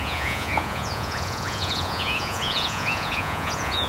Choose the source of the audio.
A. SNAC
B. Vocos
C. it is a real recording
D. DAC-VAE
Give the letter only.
B